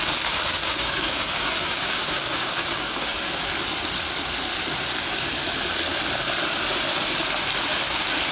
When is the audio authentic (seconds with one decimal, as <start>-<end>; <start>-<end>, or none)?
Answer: 0.0-0.5; 3.3-8.3

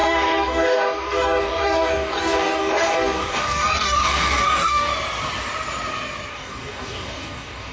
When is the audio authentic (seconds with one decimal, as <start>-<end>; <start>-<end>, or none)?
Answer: 4.9-6.3

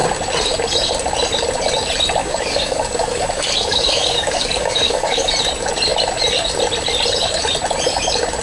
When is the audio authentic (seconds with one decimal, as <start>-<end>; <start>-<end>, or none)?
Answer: 0.0-2.2; 5.3-8.4

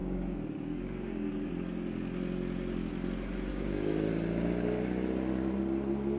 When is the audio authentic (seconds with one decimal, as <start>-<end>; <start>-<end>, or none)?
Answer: 1.5-3.5; 4.1-6.2

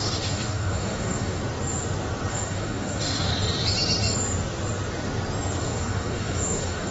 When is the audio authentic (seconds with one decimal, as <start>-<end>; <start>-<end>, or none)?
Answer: 1.4-2.3; 3.3-5.6

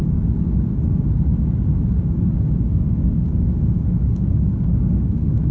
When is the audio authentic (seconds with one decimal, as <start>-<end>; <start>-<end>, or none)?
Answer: none

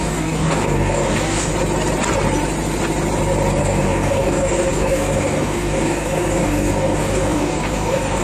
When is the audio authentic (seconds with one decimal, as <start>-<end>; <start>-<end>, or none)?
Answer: 1.5-3.6

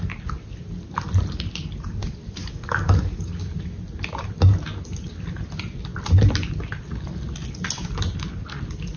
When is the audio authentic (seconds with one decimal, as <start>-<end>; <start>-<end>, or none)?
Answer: 0.0-2.4; 3.3-9.0